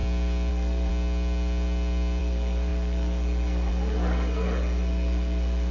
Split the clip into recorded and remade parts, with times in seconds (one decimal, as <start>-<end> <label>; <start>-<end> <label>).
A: 0.0-0.5 recorded; 0.5-0.9 remade; 0.9-2.2 recorded; 2.2-5.7 remade